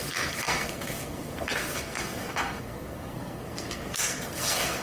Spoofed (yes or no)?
yes